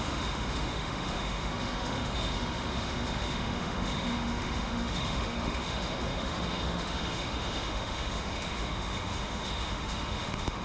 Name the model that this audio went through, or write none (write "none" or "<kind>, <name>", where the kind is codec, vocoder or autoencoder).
autoencoder, DAC-VAE